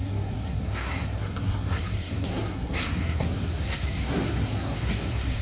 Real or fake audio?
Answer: fake